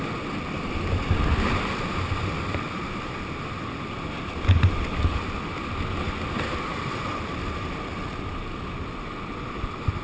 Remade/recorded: recorded